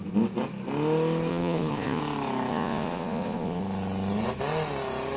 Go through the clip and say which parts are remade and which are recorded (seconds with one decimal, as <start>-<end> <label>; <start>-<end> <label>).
0.0-1.3 recorded; 1.3-2.0 remade; 2.0-2.5 recorded; 2.5-3.6 remade; 3.6-5.2 recorded